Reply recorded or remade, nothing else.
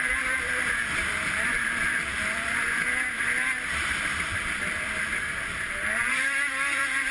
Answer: remade